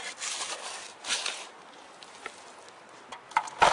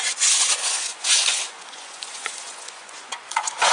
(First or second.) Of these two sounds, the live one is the first